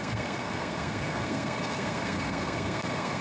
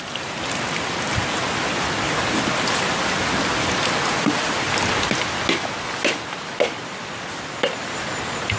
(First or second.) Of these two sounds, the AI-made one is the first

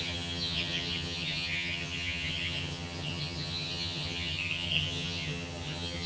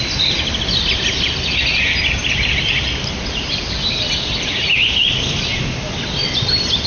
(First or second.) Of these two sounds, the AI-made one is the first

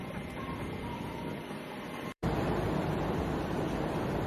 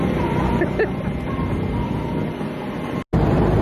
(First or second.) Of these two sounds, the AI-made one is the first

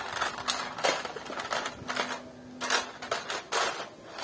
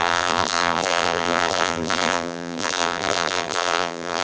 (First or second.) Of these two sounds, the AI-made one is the second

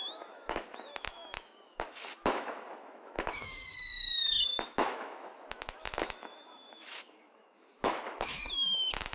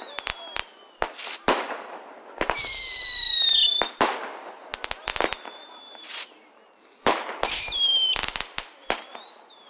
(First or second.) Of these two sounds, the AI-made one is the first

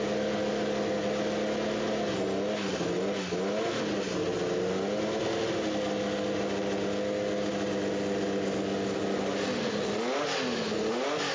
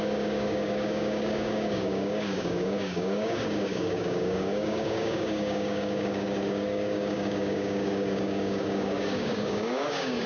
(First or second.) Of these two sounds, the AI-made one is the second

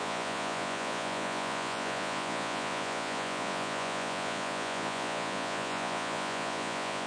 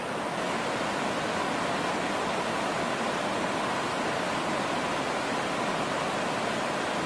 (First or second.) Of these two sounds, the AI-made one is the first